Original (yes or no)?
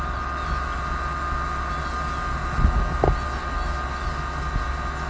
yes